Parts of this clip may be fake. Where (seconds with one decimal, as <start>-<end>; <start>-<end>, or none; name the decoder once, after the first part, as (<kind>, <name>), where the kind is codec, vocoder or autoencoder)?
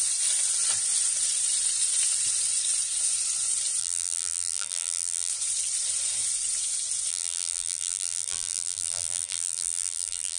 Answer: 3.8-5.3 (vocoder, BigVGAN v2); 7.1-10.4